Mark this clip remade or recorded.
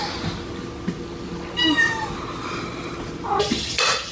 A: recorded